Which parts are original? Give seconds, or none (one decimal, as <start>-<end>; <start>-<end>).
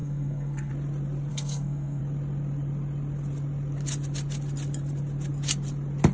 0.7-1.3; 2.0-6.1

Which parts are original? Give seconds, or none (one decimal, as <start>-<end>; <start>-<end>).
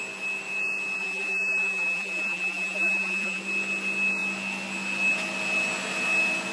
0.0-1.0; 3.4-6.5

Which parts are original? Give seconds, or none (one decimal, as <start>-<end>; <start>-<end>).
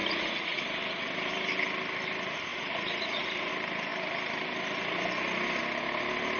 0.6-2.5; 3.5-6.4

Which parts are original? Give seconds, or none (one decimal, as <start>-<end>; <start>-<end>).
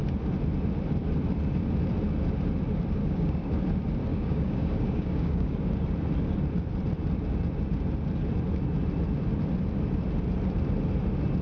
0.0-3.0; 3.5-4.1; 5.7-11.4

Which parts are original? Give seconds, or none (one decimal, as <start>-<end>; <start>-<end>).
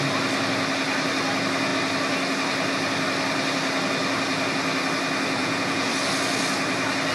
0.0-5.4; 5.9-7.1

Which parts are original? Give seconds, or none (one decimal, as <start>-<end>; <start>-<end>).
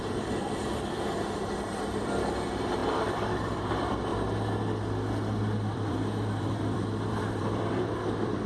none